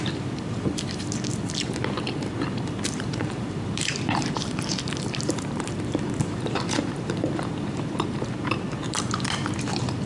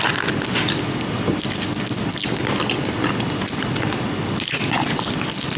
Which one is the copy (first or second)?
first